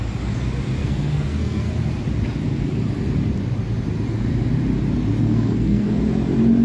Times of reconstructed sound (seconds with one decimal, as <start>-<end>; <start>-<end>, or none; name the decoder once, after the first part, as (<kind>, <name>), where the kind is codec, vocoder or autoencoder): 0.8-1.7 (codec, SNAC); 5.2-6.0